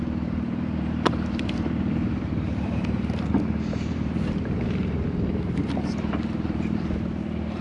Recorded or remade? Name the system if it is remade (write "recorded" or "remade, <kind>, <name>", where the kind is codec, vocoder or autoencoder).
remade, vocoder, BigVGAN v2